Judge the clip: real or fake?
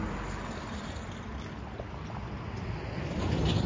real